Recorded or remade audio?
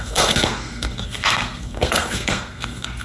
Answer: remade